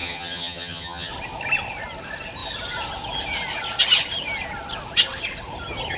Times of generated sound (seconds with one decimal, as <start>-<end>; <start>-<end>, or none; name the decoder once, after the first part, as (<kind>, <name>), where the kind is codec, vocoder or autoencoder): 0.0-1.1 (vocoder, HiFi-GAN)